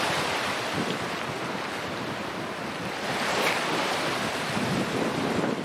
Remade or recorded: recorded